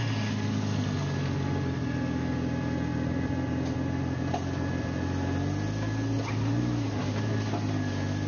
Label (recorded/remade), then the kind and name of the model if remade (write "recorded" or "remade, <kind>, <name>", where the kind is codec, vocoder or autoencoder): recorded